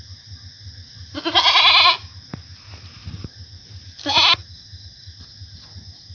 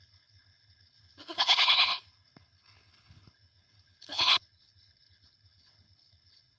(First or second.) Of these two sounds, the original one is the first